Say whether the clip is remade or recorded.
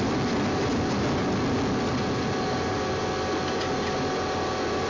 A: recorded